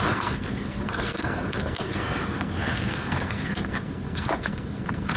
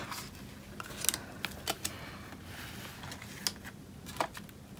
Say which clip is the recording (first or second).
second